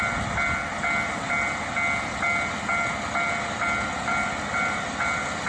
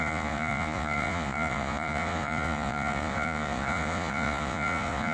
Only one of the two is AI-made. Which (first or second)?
second